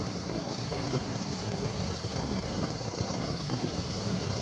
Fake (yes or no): yes